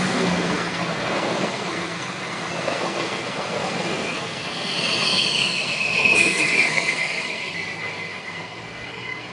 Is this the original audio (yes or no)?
no